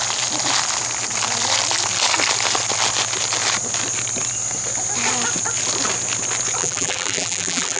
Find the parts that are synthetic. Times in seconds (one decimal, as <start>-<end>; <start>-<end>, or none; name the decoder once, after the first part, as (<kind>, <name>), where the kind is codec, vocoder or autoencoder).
6.6-7.8 (vocoder, BigVGAN v2)